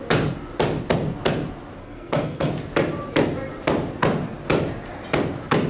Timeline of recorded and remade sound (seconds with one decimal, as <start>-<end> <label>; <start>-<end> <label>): 0.0-1.8 recorded; 1.8-2.5 remade; 2.5-5.7 recorded